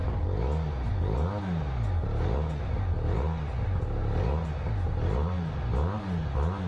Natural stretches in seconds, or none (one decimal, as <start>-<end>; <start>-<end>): 0.0-6.7